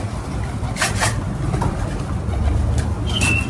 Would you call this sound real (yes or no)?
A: yes